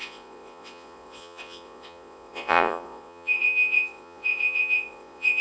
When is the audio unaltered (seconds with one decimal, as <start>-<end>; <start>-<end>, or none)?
none